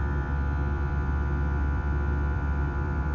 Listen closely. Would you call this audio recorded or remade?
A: remade